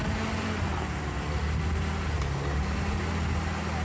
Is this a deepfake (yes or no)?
no